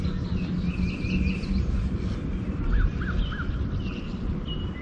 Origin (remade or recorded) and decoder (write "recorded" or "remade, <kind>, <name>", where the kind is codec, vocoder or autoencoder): recorded